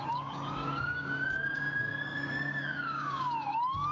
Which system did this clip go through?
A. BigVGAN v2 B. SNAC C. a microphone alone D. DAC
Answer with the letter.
D